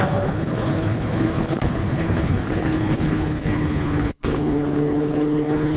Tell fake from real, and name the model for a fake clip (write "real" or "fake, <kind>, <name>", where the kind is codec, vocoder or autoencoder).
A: fake, codec, HILCodec